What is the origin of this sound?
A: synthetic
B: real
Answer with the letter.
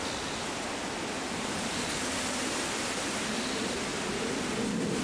B